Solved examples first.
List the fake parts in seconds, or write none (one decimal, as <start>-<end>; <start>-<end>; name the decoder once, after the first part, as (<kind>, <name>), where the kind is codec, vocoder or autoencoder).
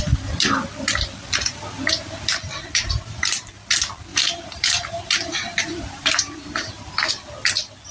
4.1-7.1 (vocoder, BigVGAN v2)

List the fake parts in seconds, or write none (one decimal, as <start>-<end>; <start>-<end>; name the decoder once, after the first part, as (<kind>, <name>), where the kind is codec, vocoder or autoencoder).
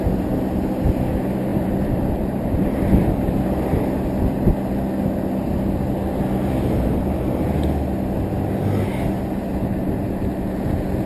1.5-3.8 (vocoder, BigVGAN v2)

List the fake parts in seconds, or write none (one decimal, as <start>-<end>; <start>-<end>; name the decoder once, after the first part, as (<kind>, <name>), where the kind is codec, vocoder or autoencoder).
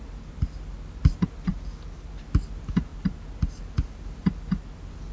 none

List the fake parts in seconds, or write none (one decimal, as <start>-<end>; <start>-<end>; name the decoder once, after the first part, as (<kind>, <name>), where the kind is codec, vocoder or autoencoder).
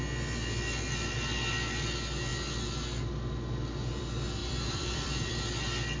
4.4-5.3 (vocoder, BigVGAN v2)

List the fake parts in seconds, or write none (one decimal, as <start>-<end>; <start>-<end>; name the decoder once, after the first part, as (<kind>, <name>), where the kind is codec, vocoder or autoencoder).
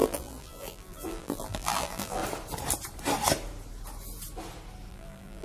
0.0-2.2 (vocoder, BigVGAN v2); 4.9-5.4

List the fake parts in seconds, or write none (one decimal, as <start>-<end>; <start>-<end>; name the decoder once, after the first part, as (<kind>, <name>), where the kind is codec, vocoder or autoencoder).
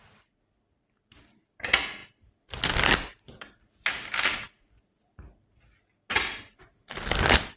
none